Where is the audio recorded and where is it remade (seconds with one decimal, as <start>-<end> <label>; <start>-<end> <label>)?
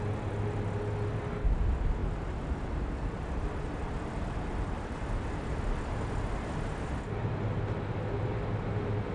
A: 0.0-9.1 recorded